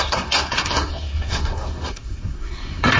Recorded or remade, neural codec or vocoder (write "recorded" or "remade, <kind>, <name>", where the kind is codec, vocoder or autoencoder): remade, codec, SNAC